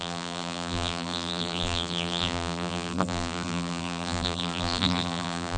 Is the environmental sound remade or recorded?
remade